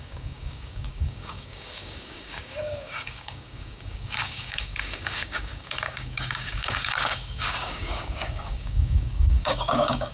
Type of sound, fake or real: fake